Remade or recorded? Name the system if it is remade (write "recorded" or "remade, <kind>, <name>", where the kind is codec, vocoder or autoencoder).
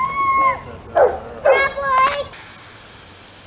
recorded